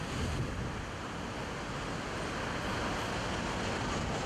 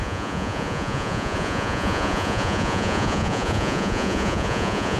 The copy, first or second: second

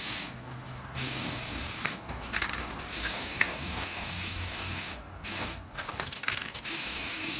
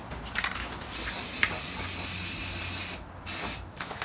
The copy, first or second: first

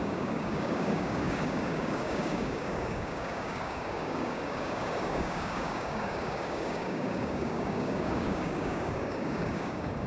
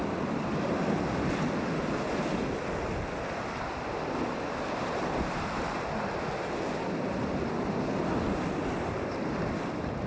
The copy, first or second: first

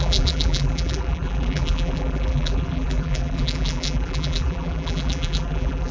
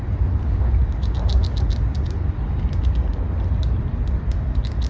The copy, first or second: first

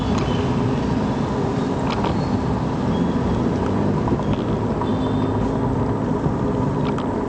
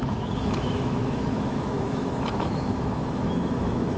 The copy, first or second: second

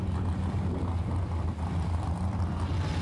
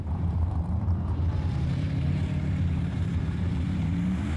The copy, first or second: second